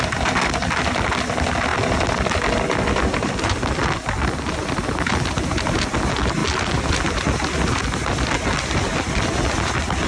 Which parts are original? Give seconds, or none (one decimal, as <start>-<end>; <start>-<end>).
0.0-10.1